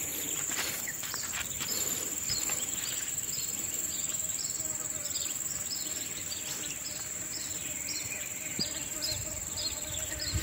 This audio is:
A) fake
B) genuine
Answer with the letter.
A